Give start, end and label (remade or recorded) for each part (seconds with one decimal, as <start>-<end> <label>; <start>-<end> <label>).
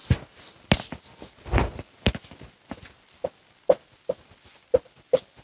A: 0.0-5.4 recorded